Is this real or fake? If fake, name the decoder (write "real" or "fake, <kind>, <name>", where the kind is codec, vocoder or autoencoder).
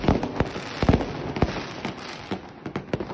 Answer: real